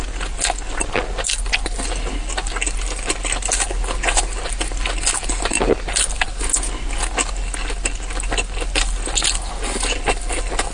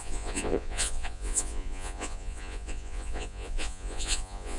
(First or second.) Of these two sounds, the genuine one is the first